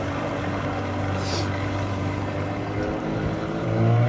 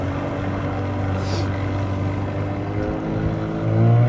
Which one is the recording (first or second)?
second